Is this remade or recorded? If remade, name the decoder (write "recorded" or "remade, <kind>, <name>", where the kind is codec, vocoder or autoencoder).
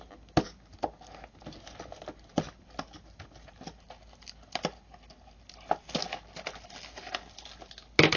recorded